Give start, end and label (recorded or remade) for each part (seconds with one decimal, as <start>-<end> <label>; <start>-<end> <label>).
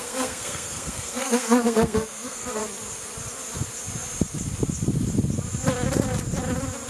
0.0-2.6 remade; 2.6-6.9 recorded